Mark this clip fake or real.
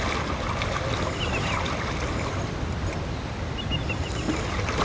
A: real